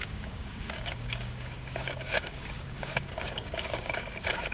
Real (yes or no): no